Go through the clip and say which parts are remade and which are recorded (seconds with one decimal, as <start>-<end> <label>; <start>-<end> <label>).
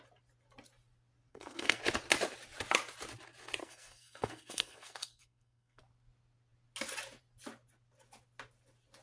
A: 0.0-1.3 recorded; 1.3-1.8 remade; 1.8-3.6 recorded; 3.6-5.8 remade; 5.8-9.0 recorded